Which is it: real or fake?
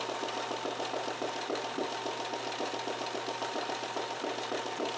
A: real